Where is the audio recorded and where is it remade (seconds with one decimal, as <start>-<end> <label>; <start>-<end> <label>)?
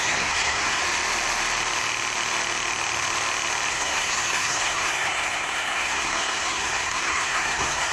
0.0-0.8 remade; 0.8-3.7 recorded; 3.7-7.9 remade